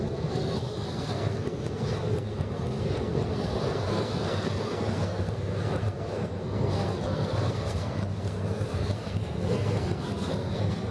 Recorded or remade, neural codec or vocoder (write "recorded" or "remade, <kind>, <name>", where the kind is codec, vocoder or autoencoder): remade, codec, SNAC